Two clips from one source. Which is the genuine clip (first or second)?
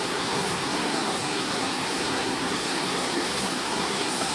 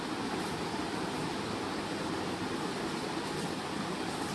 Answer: second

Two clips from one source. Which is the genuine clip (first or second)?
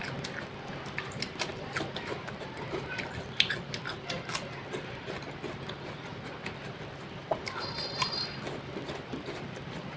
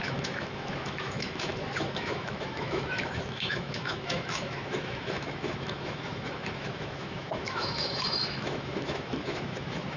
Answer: first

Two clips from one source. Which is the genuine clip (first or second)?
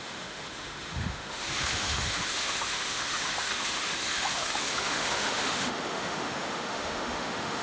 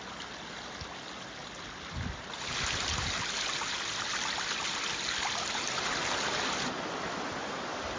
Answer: second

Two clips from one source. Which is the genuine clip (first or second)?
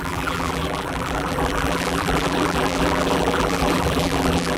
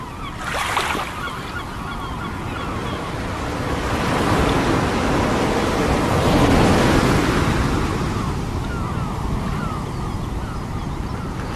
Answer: second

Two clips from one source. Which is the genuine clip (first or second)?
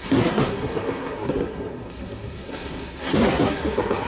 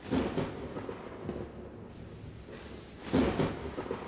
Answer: second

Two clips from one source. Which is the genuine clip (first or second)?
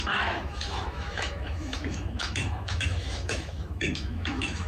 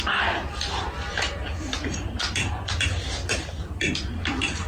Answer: second